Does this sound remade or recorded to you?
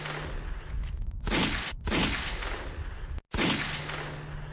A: recorded